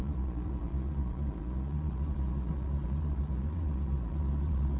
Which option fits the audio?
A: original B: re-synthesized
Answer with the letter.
B